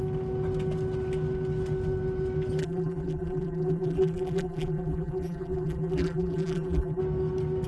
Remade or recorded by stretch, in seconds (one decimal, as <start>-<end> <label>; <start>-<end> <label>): 0.0-2.6 recorded; 2.6-7.0 remade; 7.0-7.7 recorded